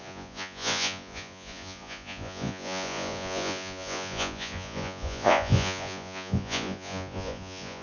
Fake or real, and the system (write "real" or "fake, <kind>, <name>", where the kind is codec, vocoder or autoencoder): fake, vocoder, Vocos